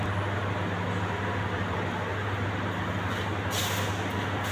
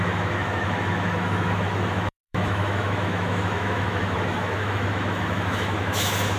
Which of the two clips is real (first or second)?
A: first